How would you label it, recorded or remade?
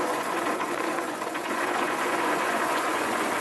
remade